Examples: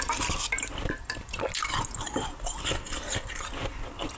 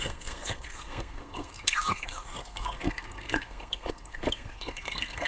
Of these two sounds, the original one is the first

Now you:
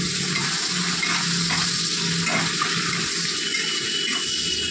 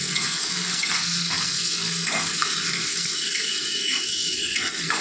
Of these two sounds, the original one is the first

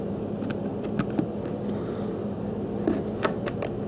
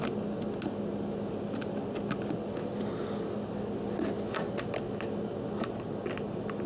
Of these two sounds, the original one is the second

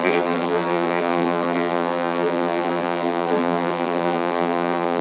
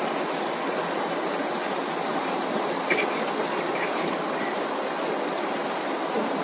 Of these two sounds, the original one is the second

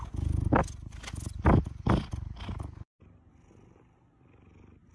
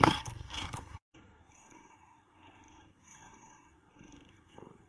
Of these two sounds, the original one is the first